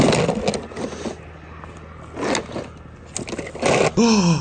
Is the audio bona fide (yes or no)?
yes